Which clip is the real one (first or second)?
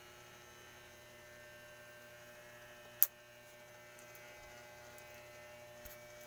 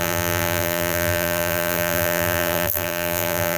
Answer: first